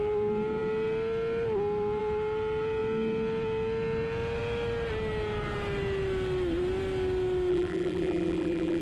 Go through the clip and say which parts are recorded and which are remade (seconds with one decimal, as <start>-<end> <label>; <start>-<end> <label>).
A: 0.0-7.5 recorded; 7.5-8.8 remade